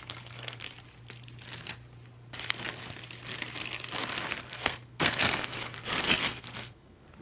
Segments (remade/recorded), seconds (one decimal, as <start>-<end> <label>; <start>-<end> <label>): 0.0-0.6 remade; 0.6-4.5 recorded; 4.5-7.2 remade